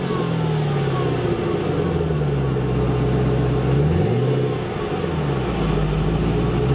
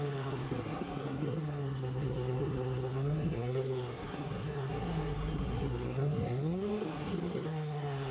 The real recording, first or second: first